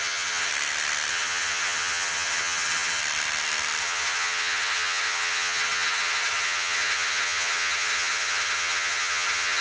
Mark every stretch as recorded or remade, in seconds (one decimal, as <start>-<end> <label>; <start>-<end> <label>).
0.0-0.5 remade; 0.5-1.1 recorded; 1.1-3.0 remade; 3.0-3.8 recorded; 3.8-9.6 remade